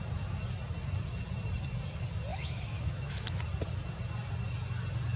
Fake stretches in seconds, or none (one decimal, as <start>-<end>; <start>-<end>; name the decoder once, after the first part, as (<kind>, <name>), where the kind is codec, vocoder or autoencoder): 2.3-3.4 (autoencoder, DAC-VAE)